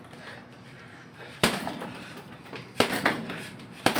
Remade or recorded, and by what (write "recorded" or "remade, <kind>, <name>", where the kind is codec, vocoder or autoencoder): remade, vocoder, BigVGAN v2